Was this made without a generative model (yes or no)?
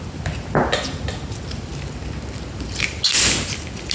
yes